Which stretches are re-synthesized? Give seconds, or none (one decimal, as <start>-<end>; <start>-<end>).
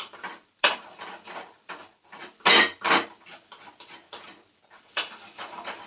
none